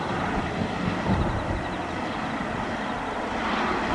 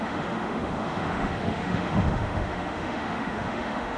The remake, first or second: second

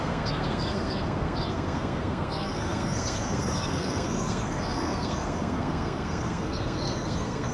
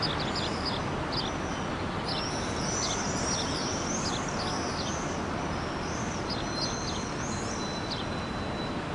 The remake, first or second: first